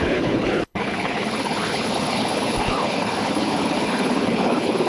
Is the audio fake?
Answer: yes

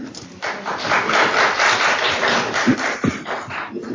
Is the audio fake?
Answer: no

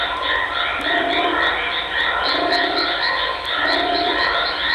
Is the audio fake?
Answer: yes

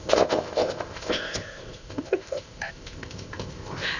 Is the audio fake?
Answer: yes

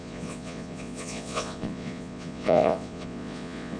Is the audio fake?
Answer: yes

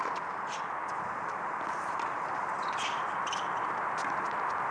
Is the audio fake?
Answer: no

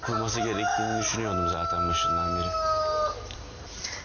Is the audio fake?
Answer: no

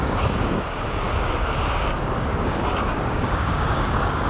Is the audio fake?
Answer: yes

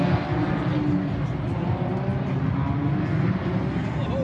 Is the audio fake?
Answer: no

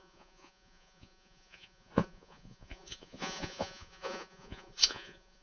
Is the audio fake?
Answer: yes